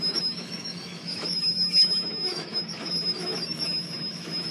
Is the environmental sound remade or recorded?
remade